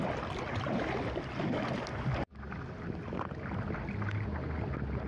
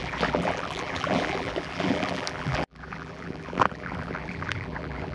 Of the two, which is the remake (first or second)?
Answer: second